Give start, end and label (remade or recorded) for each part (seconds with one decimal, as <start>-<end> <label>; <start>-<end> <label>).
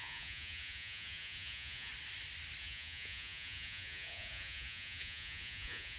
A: 0.0-1.9 remade; 1.9-2.6 recorded; 2.6-6.0 remade